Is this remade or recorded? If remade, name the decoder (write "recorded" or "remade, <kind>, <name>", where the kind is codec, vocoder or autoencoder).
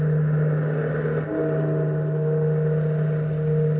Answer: recorded